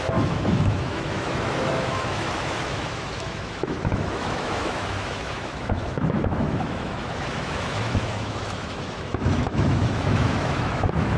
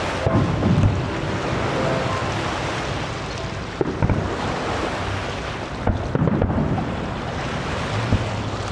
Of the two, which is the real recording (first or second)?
second